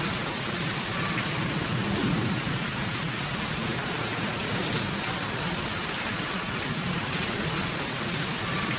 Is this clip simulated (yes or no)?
no